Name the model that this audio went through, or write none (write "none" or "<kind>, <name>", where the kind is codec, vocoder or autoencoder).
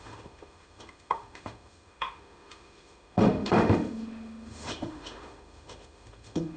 autoencoder, DAC-VAE